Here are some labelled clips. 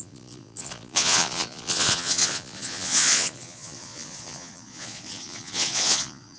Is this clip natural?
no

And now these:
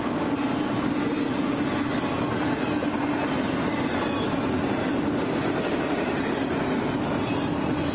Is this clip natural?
yes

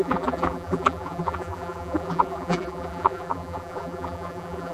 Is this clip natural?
no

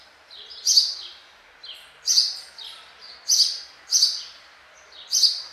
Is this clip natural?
yes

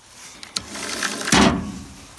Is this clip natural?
yes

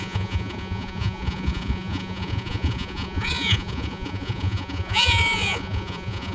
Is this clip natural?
no